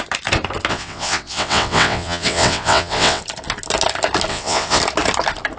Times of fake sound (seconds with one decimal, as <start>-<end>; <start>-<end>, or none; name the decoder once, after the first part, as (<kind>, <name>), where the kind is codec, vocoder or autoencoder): 0.7-3.2 (vocoder, WaveNeXt); 4.3-4.8